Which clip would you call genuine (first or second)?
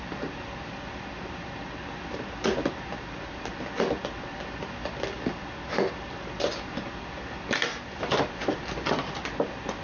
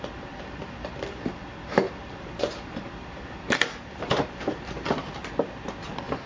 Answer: first